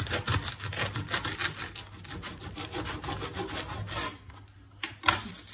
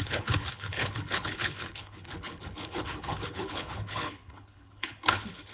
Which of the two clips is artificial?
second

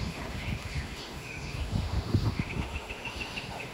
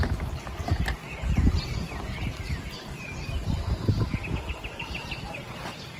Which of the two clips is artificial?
first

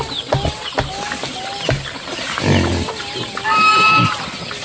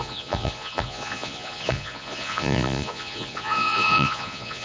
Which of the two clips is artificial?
second